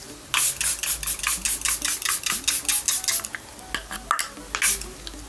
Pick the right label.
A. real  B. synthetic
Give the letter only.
A